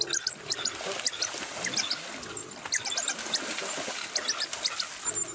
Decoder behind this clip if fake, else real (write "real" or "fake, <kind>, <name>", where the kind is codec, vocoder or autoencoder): real